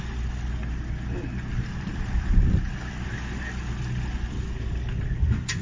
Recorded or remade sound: recorded